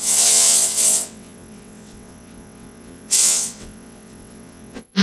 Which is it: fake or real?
fake